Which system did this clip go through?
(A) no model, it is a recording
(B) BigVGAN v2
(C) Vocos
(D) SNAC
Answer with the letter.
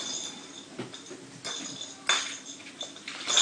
A